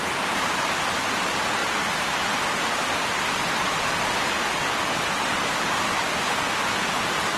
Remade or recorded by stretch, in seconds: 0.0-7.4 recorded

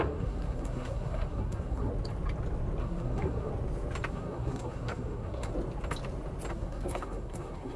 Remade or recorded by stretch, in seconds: 0.0-1.9 remade; 1.9-2.8 recorded; 2.8-3.5 remade; 3.5-4.1 recorded; 4.1-5.5 remade; 5.5-6.5 recorded; 6.5-7.8 remade

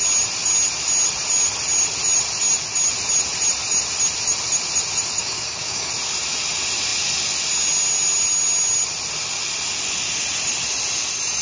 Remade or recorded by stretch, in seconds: 0.0-5.2 recorded; 5.2-5.9 remade; 5.9-11.4 recorded

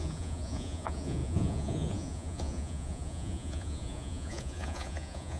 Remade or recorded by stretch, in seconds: 0.0-5.4 remade

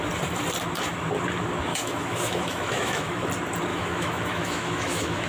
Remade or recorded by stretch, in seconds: 0.0-1.7 recorded; 1.7-3.3 remade; 3.3-3.7 recorded; 3.7-5.3 remade

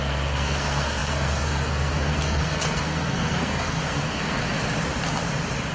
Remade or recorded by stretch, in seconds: 0.0-4.4 remade; 4.4-5.7 recorded